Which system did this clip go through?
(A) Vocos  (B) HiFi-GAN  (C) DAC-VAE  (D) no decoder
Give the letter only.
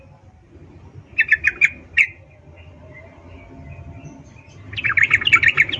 D